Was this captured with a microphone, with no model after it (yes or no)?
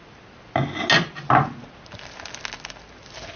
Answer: yes